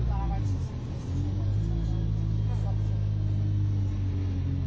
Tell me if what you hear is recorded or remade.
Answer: recorded